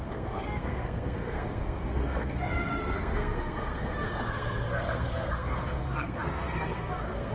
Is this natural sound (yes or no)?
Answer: no